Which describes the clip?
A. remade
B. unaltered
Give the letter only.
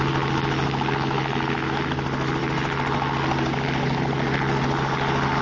B